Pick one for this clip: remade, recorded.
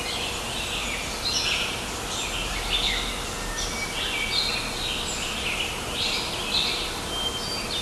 recorded